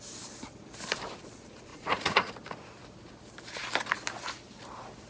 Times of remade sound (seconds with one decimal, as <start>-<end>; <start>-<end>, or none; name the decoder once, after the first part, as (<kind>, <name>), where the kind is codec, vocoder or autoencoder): 1.7-2.3 (vocoder, Vocos)

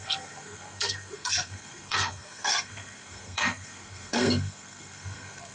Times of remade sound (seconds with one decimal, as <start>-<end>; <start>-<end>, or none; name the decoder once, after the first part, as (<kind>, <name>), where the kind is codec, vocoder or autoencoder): 0.0-5.5 (codec, SNAC)

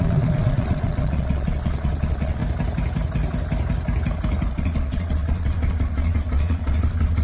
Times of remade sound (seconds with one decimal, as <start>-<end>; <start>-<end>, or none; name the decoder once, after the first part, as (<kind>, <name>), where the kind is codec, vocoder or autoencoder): 0.0-2.4 (vocoder, Vocos); 4.5-7.2

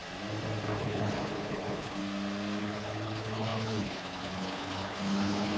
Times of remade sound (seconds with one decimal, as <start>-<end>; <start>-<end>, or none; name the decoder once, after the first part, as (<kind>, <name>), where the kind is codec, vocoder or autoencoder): 0.8-2.0 (codec, HILCodec); 2.6-5.6

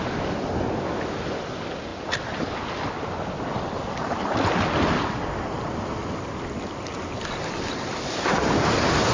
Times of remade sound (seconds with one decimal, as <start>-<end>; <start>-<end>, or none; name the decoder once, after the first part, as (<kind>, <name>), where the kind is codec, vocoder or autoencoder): none